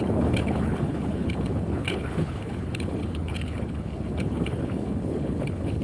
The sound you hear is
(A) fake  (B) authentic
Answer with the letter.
A